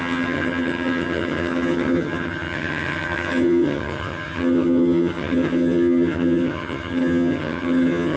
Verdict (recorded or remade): remade